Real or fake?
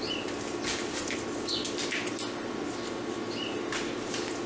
real